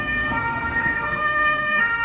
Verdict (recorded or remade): remade